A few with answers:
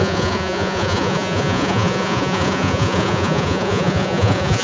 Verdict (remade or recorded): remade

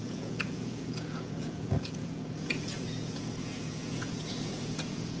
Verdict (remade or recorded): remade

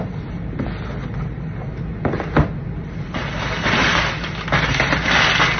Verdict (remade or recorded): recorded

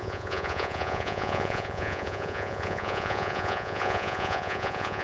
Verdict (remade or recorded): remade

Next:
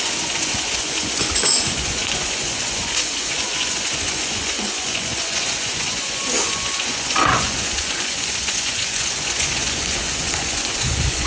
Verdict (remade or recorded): remade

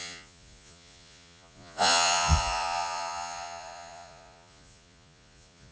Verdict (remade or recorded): remade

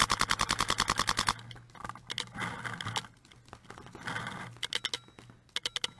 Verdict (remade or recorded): recorded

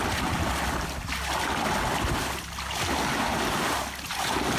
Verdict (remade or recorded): recorded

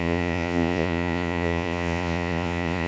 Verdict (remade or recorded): remade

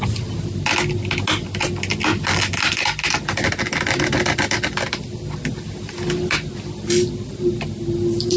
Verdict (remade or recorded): recorded